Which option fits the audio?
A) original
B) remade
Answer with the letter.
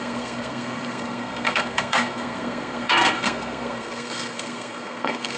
B